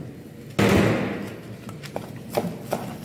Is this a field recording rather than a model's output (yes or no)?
yes